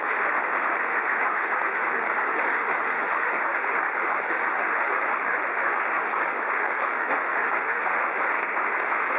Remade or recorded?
remade